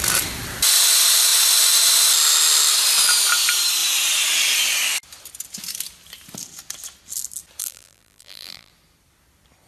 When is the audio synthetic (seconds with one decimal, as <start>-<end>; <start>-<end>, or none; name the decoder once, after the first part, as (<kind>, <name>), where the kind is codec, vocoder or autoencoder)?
7.6-8.7 (vocoder, BigVGAN v2)

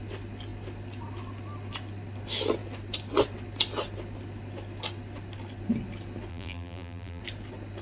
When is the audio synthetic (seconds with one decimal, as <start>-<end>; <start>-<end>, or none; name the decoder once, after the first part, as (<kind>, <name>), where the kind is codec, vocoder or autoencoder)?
6.3-7.2 (vocoder, BigVGAN v2)

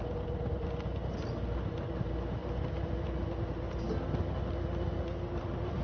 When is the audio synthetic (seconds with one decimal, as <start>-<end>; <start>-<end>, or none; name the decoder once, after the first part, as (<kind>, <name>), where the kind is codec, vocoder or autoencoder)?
none

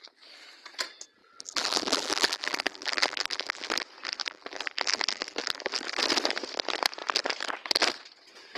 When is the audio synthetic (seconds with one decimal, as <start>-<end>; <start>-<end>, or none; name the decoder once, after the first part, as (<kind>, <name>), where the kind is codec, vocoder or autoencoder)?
1.2-3.7 (vocoder, BigVGAN v2); 4.2-5.7

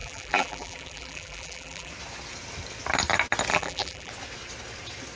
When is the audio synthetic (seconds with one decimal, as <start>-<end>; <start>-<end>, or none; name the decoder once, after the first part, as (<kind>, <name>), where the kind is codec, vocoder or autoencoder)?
0.0-1.9 (vocoder, BigVGAN v2); 3.5-4.1

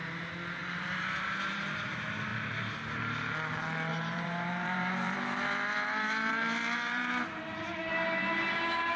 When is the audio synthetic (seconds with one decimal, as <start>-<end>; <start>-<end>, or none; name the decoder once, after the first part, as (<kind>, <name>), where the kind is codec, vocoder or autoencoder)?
0.6-1.9 (vocoder, BigVGAN v2); 3.9-7.4